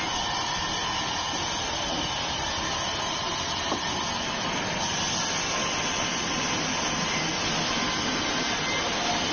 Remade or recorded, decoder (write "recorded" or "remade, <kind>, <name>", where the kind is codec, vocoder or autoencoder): recorded